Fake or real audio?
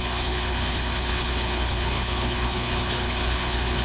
fake